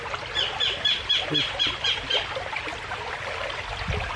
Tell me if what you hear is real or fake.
real